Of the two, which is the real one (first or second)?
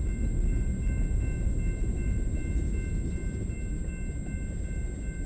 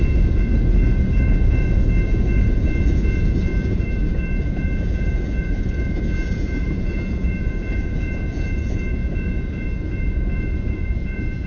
first